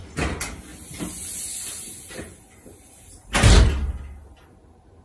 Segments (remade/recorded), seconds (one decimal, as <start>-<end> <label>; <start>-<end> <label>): 0.0-0.7 recorded; 0.7-3.6 remade; 3.6-5.0 recorded